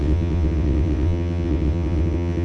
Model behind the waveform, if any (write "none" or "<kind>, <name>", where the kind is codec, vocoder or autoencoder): vocoder, WaveNeXt